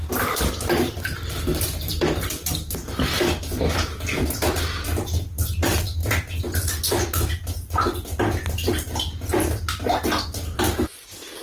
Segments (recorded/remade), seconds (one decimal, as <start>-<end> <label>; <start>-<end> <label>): 0.0-11.4 recorded